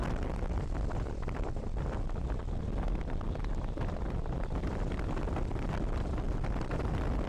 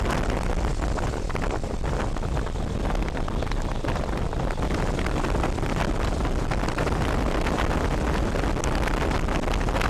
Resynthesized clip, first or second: first